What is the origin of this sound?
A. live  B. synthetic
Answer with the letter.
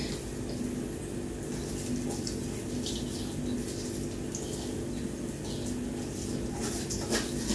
A